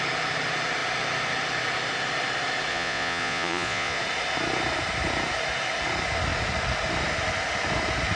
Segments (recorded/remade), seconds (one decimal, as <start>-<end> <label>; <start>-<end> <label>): 0.0-2.7 recorded; 2.7-4.0 remade; 4.0-8.2 recorded